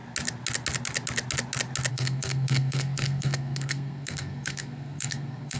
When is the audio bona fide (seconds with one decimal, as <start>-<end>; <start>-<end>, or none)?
0.0-1.9

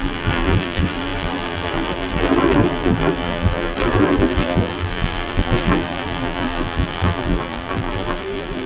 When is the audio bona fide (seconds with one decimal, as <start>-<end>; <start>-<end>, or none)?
none